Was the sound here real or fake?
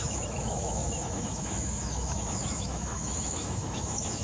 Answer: fake